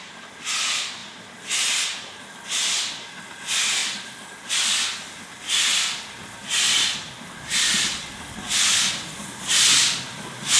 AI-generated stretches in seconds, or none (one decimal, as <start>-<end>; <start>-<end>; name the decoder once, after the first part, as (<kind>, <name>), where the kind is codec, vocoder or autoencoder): none